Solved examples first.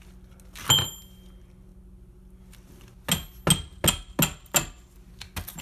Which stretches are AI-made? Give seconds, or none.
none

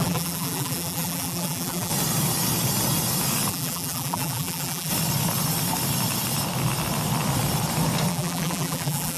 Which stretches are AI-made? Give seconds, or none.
0.0-1.9 (vocoder, BigVGAN v2); 3.5-4.9; 8.1-9.2